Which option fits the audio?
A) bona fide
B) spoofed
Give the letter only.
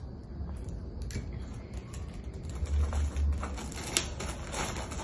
A